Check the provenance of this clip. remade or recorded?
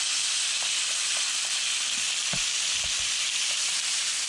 recorded